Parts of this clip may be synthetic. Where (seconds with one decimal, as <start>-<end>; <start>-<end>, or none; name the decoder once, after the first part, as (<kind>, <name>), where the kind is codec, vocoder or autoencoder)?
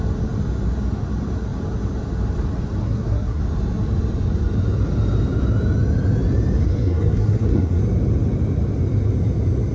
2.8-3.4 (codec, SNAC); 6.6-7.8